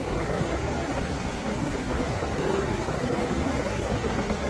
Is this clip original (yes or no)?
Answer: no